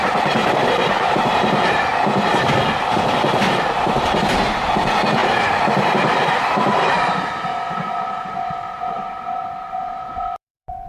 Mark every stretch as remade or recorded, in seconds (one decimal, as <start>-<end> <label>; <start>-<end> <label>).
0.0-1.9 remade; 1.9-4.0 recorded; 4.0-10.9 remade